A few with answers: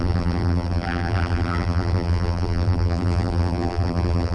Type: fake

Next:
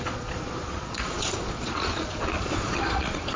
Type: fake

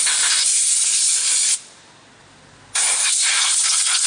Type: real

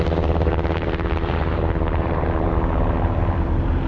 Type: fake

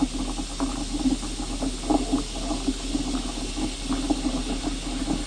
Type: real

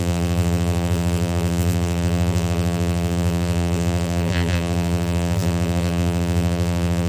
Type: fake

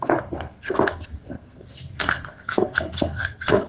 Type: fake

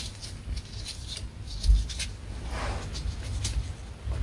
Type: real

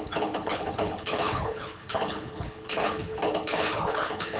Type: fake